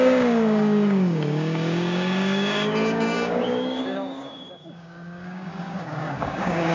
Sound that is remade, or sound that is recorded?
remade